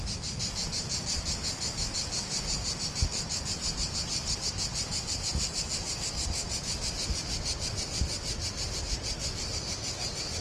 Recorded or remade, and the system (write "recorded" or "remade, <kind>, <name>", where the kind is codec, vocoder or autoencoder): recorded